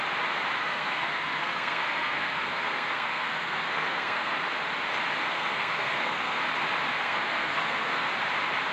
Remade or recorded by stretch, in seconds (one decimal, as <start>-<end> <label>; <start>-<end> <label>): 0.0-0.6 recorded; 0.6-4.4 remade; 4.4-5.2 recorded; 5.2-6.4 remade; 6.4-6.9 recorded; 6.9-8.1 remade; 8.1-8.7 recorded